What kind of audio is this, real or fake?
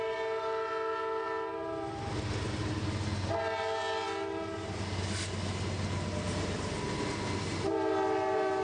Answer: real